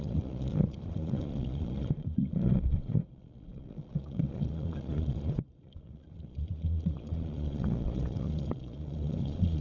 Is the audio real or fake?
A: fake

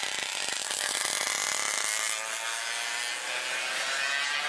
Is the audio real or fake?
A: real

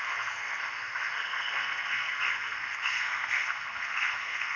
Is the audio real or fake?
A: fake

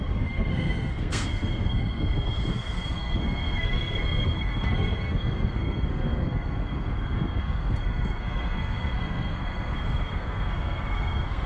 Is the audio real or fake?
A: fake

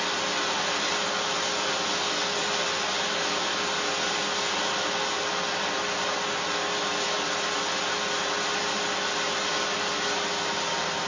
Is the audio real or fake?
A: real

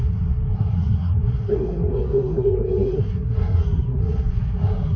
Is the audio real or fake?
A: fake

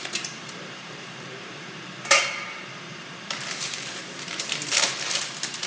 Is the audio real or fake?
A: fake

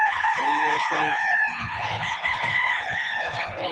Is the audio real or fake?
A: fake